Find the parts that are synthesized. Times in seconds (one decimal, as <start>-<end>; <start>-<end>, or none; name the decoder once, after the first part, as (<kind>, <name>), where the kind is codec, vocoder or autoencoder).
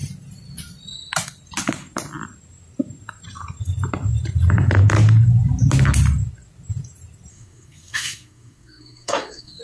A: 7.3-9.6 (codec, SNAC)